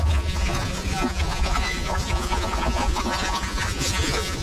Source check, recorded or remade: remade